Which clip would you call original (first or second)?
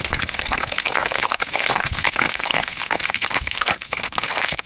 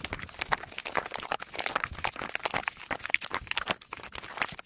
second